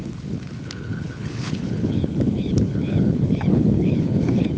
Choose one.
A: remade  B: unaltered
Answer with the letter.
A